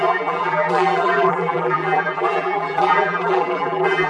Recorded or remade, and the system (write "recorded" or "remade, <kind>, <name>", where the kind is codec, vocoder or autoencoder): remade, vocoder, BigVGAN v2